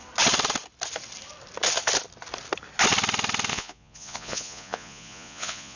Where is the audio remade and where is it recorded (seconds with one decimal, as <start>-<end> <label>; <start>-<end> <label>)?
0.0-3.5 recorded; 3.5-5.8 remade